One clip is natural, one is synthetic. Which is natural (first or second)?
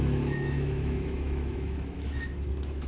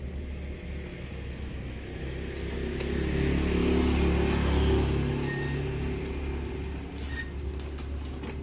second